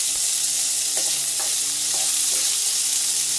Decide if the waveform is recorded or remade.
recorded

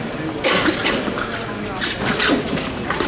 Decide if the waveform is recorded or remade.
recorded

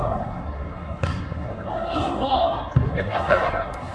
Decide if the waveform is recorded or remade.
remade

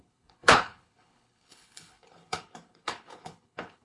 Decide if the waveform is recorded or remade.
remade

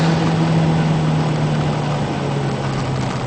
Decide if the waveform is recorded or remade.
recorded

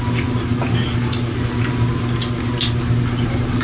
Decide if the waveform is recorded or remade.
recorded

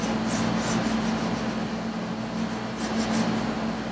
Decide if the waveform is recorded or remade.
recorded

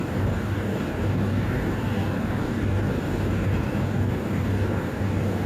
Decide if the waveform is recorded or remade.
remade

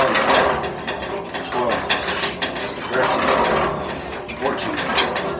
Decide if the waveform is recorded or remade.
recorded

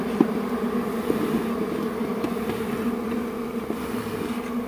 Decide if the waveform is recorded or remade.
recorded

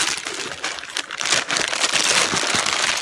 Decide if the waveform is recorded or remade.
recorded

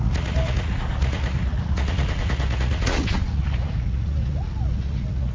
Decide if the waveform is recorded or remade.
remade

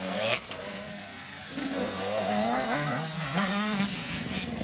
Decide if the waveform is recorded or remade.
remade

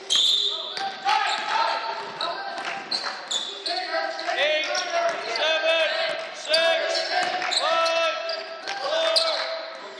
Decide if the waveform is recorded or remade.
recorded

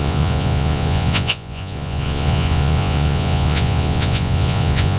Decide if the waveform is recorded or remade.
remade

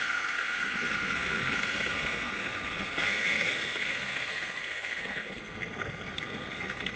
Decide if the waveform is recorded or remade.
remade